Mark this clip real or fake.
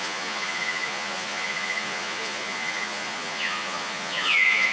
fake